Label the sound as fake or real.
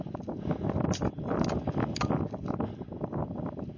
real